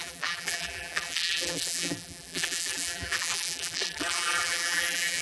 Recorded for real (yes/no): no